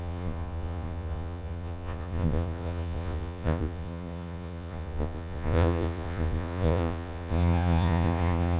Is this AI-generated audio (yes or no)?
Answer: yes